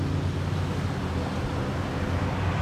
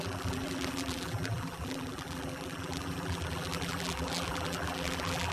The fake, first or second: second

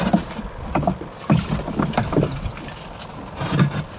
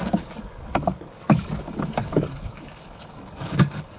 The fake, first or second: second